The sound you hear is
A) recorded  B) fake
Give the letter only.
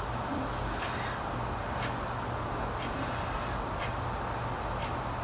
A